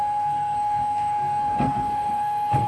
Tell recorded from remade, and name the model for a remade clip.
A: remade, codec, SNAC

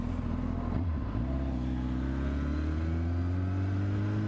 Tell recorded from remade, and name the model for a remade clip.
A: recorded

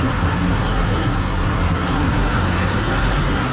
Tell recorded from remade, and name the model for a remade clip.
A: remade, codec, SNAC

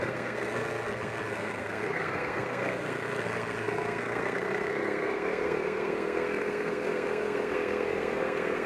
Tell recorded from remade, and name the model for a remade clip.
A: remade, codec, SNAC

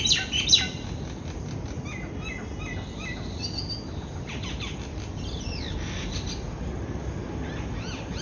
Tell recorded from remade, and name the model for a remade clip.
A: recorded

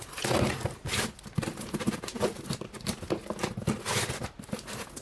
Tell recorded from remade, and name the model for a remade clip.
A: recorded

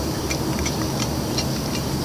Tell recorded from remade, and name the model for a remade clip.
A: recorded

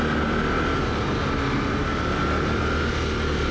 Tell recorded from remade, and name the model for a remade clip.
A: recorded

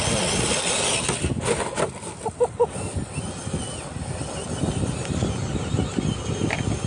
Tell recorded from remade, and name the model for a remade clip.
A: recorded